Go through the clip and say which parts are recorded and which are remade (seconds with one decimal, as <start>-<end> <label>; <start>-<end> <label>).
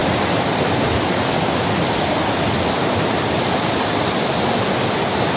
0.0-5.4 recorded